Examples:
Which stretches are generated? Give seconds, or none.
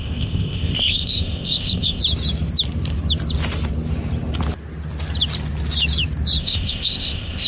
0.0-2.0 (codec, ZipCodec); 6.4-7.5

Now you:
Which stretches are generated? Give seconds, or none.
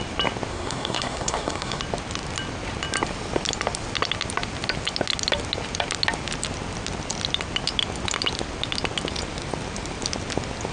0.5-1.8 (codec, SNAC)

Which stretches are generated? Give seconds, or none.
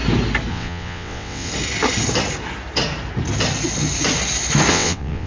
0.5-1.5 (vocoder, WaveNeXt); 4.7-5.3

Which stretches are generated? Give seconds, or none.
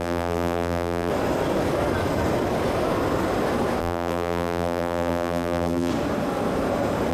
0.0-1.1 (vocoder, BigVGAN v2); 3.8-5.9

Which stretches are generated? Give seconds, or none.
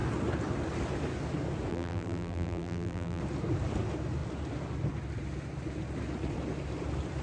1.7-3.2 (vocoder, BigVGAN v2)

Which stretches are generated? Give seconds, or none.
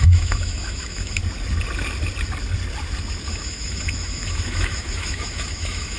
0.0-1.2 (autoencoder, DAC-VAE); 3.3-6.0